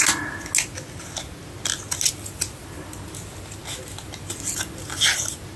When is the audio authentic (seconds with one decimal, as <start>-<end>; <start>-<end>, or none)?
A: 0.0-5.6